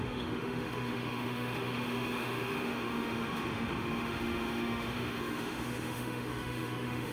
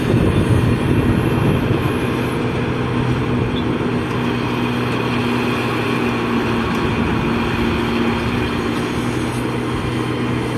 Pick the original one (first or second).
second